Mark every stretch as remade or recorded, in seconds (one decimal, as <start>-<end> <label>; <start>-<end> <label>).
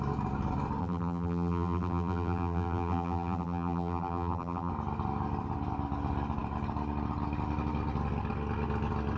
0.0-0.8 recorded; 0.8-4.7 remade; 4.7-9.2 recorded